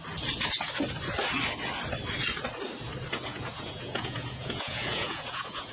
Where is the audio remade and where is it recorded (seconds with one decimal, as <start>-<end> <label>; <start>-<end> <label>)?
0.0-3.3 recorded; 3.3-5.7 remade